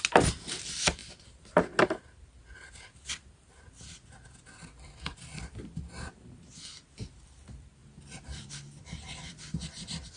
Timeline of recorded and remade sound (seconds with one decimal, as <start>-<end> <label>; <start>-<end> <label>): 0.0-7.8 recorded; 7.8-8.5 remade; 8.5-10.2 recorded